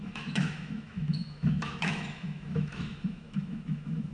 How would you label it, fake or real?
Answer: fake